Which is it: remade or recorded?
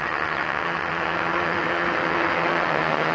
remade